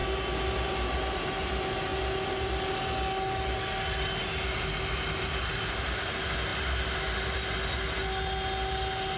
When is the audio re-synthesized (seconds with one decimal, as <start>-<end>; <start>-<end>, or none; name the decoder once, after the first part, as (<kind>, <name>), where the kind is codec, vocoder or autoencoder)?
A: none